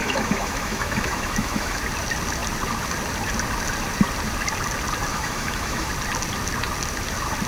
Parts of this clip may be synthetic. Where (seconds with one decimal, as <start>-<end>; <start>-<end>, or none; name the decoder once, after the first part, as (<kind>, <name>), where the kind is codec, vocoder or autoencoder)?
0.0-1.8 (autoencoder, DAC-VAE); 5.1-5.9